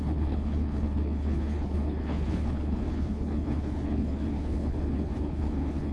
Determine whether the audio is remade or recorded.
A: remade